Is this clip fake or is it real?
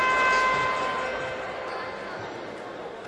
real